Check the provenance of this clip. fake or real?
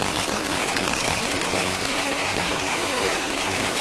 fake